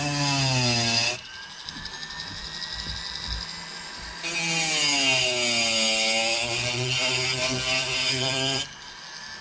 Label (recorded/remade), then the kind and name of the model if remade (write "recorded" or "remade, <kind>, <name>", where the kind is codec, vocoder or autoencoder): recorded